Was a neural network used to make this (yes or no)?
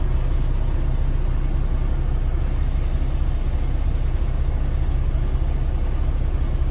no